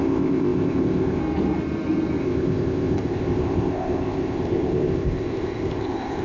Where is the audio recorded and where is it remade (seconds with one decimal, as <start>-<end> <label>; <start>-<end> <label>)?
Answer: 0.0-1.2 remade; 1.2-2.2 recorded; 2.2-6.2 remade